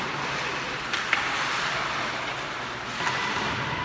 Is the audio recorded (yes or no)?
yes